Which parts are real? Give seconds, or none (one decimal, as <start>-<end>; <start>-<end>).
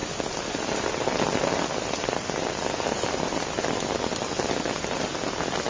0.0-5.7